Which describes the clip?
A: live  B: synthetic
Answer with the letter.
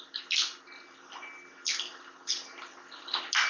A